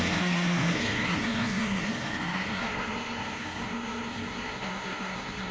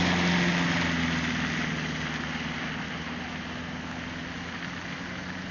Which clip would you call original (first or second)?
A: second